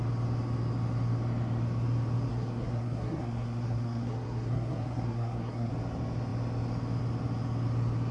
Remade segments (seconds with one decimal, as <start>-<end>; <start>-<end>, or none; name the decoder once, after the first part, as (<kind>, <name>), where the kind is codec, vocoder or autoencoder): 2.3-5.7 (codec, SNAC)

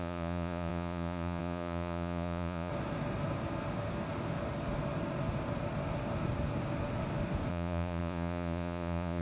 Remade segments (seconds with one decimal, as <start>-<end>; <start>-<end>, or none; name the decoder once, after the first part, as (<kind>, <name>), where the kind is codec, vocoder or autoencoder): 0.0-2.7 (vocoder, Vocos); 7.5-9.2

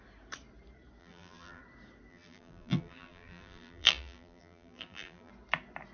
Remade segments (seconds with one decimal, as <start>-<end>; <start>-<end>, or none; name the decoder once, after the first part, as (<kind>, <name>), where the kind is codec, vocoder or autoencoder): 1.0-1.6 (vocoder, BigVGAN v2); 2.1-5.3

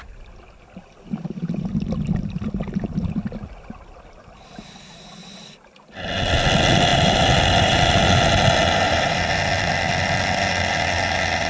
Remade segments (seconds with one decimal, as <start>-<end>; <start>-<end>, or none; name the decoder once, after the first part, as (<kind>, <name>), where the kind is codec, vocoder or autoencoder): none